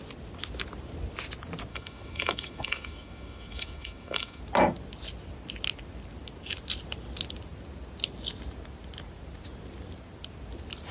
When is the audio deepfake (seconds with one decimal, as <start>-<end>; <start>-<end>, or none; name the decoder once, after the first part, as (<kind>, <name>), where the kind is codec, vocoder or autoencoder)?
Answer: 1.7-4.4 (autoencoder, DAC-VAE)